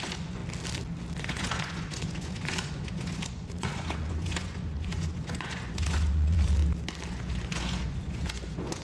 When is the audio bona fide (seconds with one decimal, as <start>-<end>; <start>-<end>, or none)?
0.4-1.2; 6.6-7.1